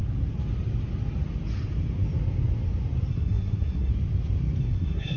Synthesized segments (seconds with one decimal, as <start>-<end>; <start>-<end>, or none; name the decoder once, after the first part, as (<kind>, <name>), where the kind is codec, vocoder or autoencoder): 3.1-3.9 (codec, SNAC); 4.6-5.2